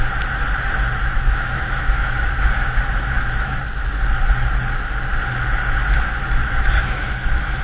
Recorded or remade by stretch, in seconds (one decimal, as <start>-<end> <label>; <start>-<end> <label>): 0.0-1.0 recorded; 1.0-3.6 remade; 3.6-6.4 recorded; 6.4-7.6 remade